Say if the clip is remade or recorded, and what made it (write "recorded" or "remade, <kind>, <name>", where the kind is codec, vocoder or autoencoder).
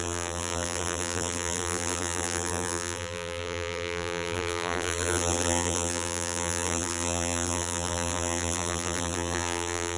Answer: remade, vocoder, BigVGAN v2